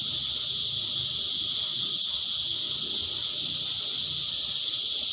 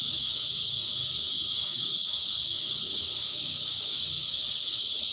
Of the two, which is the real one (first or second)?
first